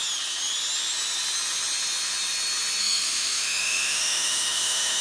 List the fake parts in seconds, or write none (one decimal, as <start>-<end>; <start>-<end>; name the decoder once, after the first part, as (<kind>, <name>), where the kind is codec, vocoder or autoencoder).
2.8-5.0 (autoencoder, DAC-VAE)